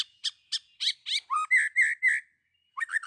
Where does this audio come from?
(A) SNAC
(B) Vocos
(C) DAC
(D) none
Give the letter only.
D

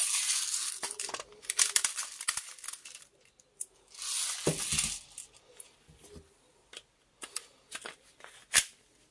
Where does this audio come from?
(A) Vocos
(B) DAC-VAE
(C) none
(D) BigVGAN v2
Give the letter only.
C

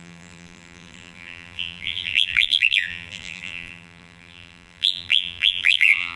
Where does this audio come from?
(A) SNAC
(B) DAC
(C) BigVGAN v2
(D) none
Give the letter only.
C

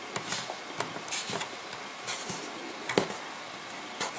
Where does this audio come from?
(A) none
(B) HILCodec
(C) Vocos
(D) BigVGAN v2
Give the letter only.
A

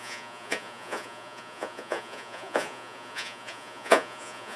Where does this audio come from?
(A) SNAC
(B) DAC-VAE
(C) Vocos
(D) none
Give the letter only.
C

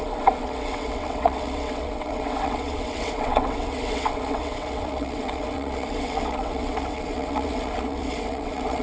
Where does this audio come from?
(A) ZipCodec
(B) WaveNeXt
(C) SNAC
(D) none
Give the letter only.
B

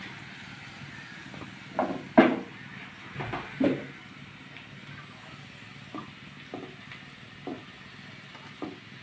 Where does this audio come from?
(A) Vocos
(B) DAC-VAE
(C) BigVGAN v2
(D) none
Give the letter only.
D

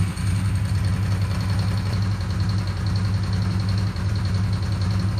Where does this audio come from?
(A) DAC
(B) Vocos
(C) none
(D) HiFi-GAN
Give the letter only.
C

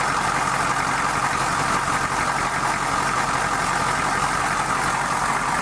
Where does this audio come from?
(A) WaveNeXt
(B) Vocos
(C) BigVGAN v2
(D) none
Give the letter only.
D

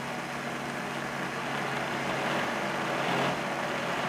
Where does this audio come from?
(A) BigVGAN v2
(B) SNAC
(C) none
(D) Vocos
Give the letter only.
C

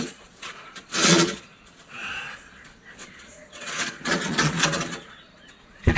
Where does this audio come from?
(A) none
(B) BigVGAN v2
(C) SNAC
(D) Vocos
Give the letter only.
D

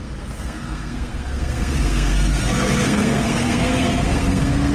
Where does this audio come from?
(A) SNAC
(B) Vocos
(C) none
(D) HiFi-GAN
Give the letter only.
A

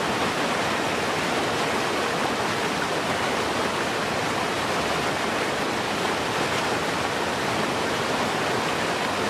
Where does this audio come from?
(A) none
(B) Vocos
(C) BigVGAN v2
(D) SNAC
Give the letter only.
A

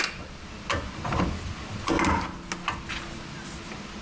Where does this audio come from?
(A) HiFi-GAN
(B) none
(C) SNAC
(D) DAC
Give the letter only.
B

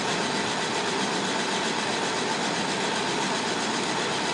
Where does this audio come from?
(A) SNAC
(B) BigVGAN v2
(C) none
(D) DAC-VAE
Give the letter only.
C